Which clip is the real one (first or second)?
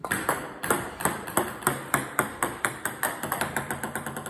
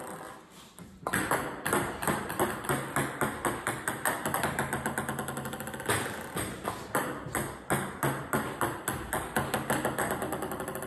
second